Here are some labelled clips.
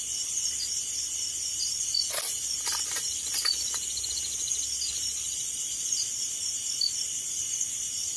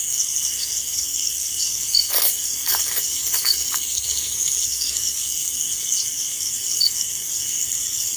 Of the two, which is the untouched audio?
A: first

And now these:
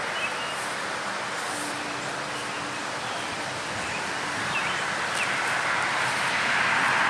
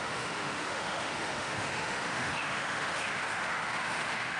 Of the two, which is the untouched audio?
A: first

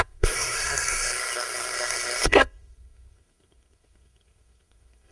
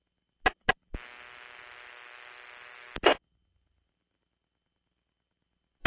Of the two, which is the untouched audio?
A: second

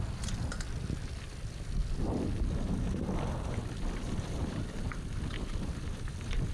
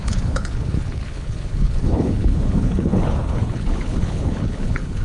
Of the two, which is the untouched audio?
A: first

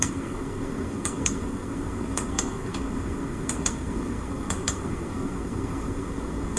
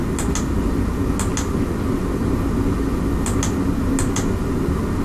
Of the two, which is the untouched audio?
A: second